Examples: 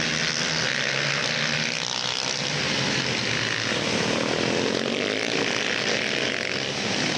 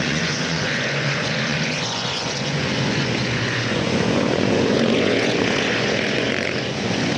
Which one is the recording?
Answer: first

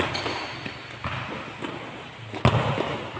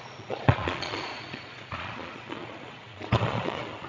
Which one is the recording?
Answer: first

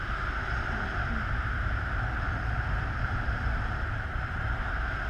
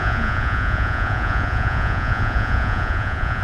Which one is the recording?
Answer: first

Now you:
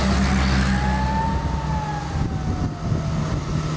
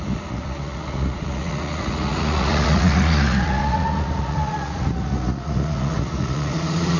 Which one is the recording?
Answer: first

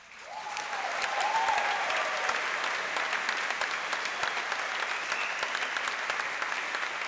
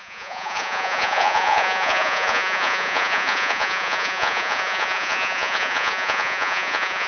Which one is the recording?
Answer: first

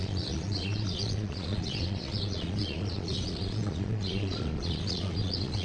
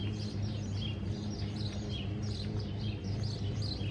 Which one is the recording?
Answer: second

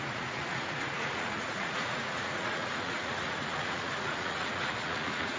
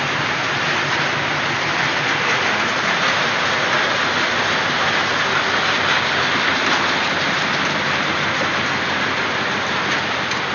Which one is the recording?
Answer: second